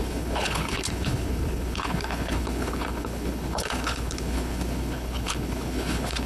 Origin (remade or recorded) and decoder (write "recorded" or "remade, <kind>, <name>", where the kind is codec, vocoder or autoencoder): remade, codec, HILCodec